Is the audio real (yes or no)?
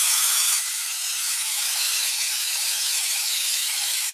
no